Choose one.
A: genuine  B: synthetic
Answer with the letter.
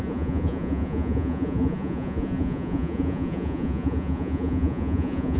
B